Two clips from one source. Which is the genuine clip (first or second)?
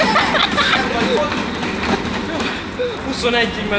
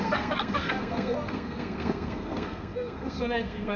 first